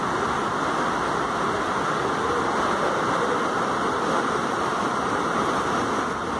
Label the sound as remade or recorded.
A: recorded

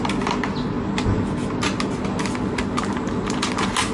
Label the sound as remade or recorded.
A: recorded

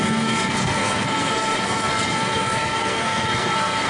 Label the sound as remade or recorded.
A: remade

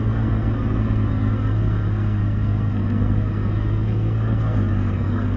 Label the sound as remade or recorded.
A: remade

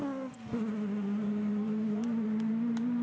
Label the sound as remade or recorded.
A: recorded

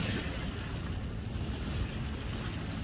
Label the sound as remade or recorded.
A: recorded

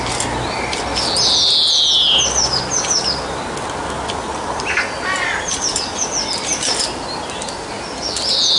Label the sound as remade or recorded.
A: recorded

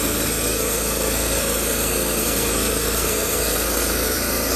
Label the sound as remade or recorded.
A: remade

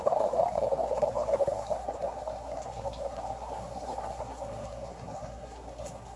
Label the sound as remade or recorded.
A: remade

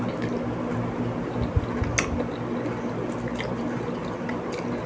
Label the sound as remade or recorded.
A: recorded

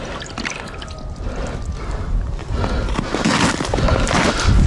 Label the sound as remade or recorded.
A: recorded